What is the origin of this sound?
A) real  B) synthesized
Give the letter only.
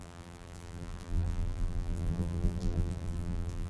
B